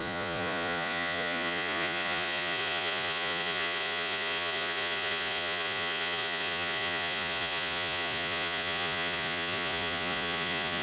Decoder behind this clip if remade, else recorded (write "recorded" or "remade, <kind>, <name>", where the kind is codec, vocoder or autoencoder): remade, vocoder, Vocos